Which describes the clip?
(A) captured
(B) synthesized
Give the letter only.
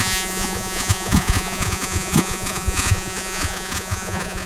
B